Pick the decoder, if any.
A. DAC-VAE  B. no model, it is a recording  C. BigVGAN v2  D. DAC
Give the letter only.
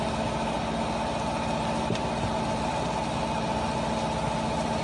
B